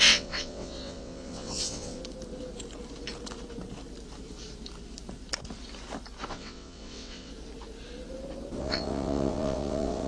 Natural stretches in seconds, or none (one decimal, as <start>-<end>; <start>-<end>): 2.0-6.3; 7.3-8.6

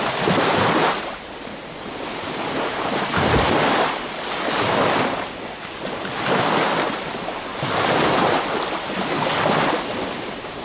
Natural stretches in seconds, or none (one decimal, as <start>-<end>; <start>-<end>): 0.0-10.6